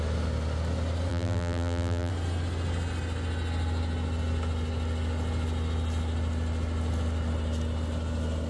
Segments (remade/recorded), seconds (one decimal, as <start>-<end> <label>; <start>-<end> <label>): 0.0-1.1 recorded; 1.1-2.1 remade; 2.1-8.5 recorded